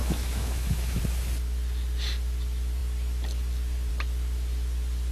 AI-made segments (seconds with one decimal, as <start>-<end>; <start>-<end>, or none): 0.0-1.0